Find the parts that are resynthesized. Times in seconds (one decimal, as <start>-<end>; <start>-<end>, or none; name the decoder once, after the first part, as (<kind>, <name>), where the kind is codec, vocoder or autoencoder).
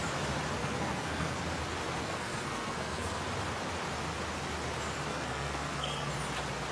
0.6-1.4 (codec, SNAC); 2.0-3.2; 5.1-6.1